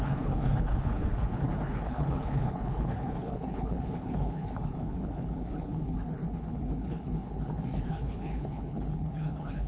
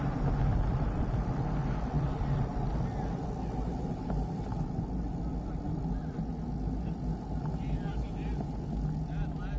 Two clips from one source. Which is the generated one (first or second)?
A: first